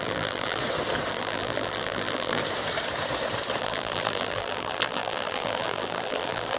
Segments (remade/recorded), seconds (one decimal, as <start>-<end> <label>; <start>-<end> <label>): 0.0-0.6 remade; 0.6-1.1 recorded; 1.1-2.4 remade; 2.4-3.6 recorded; 3.6-6.6 remade